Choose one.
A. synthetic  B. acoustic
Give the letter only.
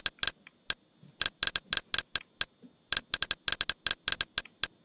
B